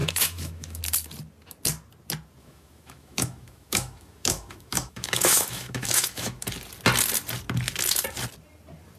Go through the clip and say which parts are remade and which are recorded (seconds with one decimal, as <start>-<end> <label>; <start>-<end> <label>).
0.0-0.8 remade; 0.8-2.4 recorded; 2.4-6.5 remade; 6.5-9.0 recorded